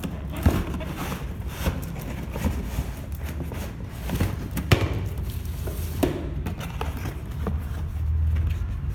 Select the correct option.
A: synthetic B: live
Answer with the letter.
B